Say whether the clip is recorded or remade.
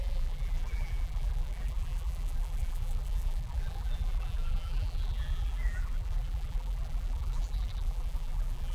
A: remade